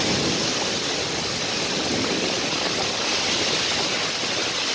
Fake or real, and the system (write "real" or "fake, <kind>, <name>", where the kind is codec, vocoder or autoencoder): real